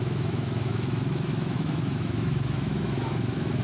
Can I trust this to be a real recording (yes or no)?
no